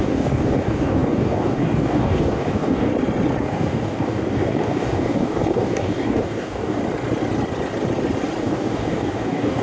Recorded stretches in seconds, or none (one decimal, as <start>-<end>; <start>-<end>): 2.9-3.4; 6.8-8.4